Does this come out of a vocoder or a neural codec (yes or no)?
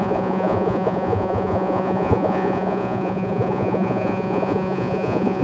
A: yes